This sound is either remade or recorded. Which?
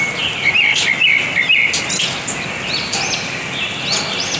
recorded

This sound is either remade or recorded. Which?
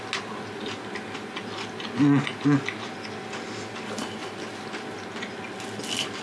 recorded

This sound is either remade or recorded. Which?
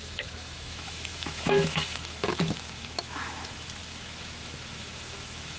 remade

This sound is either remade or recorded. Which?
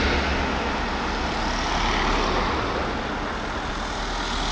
recorded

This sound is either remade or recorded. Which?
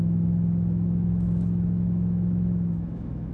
remade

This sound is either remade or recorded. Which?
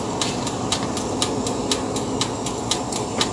recorded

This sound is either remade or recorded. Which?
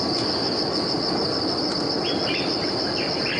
recorded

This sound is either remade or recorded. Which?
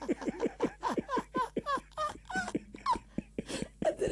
recorded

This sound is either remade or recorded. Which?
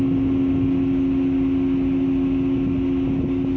recorded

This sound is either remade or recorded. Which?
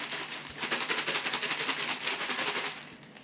recorded